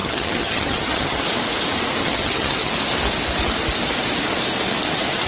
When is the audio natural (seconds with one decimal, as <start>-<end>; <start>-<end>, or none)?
1.2-2.0; 2.7-5.3